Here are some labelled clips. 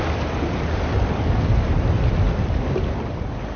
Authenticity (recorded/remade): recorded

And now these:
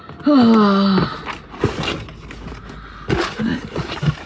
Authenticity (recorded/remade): recorded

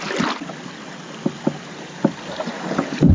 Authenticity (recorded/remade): recorded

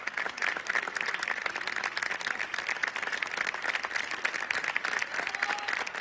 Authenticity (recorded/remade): recorded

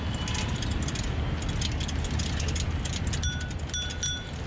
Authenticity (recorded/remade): recorded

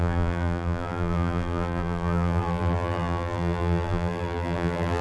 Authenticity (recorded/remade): remade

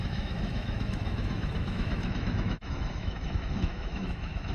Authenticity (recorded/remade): remade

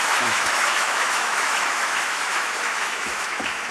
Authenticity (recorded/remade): remade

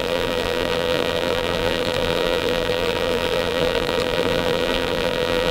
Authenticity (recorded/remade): remade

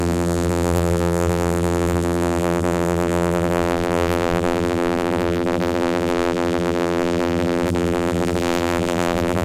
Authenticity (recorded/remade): remade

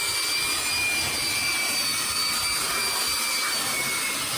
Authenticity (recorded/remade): recorded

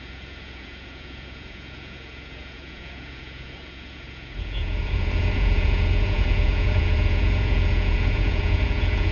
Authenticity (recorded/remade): remade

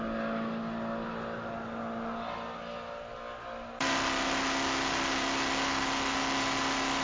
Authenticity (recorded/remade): recorded